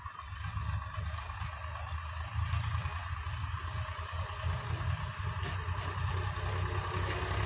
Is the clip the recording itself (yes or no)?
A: yes